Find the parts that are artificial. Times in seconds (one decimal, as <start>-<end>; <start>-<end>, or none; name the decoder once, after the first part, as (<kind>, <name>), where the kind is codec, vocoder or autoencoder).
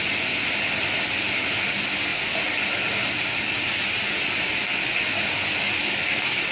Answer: none